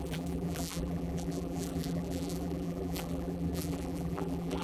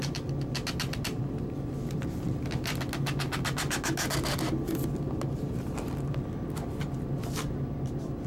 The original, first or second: second